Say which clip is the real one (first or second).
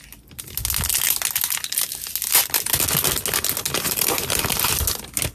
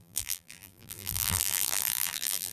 first